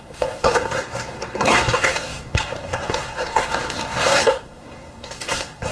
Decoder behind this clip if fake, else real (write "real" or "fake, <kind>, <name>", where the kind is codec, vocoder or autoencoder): fake, codec, SNAC